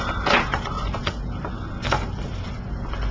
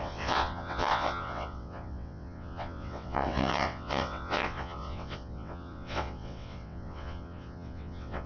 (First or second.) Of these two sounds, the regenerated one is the second